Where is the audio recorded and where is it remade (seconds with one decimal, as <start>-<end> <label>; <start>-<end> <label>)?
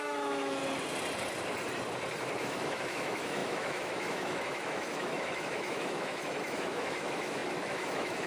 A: 0.0-0.6 remade; 0.6-2.4 recorded; 2.4-8.3 remade